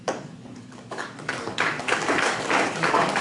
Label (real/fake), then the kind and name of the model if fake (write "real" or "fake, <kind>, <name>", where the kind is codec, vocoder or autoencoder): fake, codec, DAC